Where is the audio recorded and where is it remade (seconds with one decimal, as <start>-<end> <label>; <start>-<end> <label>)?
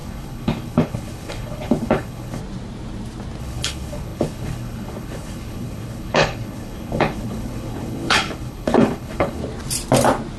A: 0.0-2.4 remade; 2.4-3.4 recorded; 3.4-9.4 remade; 9.4-10.4 recorded